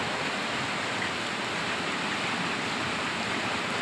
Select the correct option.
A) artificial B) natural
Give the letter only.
B